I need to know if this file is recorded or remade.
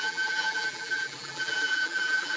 remade